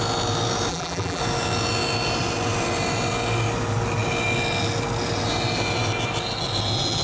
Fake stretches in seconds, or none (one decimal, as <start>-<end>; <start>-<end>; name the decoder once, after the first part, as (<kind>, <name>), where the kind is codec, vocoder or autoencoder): 0.7-1.2 (vocoder, BigVGAN v2)